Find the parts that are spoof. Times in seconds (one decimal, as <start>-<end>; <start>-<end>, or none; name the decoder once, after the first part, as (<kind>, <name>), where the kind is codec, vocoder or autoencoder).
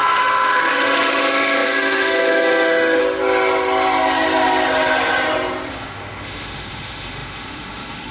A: 0.0-3.0 (autoencoder, DAC-VAE); 5.7-8.1